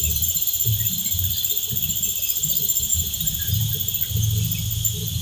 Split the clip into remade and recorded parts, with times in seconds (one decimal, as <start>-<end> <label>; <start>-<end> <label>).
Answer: 0.0-2.9 recorded; 2.9-3.7 remade; 3.7-5.2 recorded